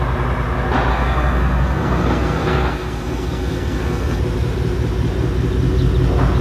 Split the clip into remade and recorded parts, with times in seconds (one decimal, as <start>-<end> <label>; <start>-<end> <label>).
0.0-0.9 recorded; 0.9-4.2 remade; 4.2-6.4 recorded